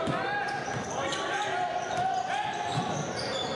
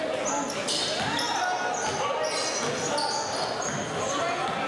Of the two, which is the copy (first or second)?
first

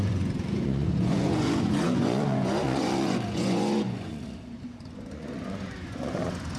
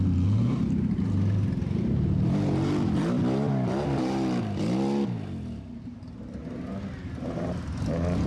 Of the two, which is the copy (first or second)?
first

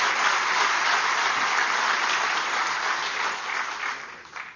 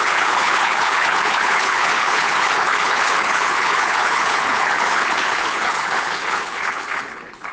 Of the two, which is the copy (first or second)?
second